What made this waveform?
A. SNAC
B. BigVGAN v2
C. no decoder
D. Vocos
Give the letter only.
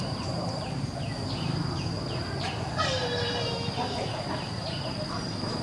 B